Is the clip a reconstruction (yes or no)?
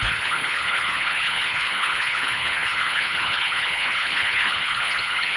yes